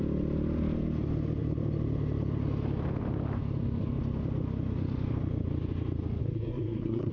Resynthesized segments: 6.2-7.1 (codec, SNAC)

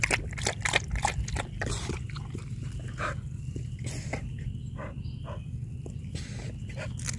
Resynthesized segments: none

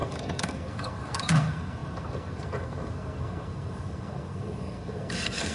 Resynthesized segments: 0.0-5.5 (codec, SNAC)

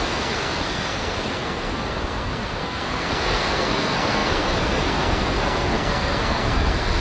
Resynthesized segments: 0.0-7.0 (codec, SNAC)

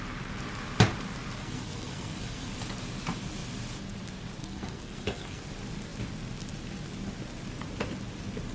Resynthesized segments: 1.4-2.5 (codec, SNAC); 4.4-5.4